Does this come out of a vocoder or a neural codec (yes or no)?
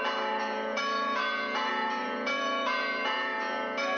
yes